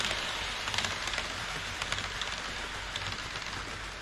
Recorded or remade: recorded